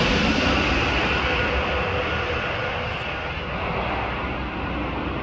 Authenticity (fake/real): real